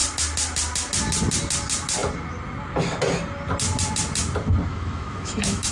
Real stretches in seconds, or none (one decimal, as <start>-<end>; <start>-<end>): 0.0-4.7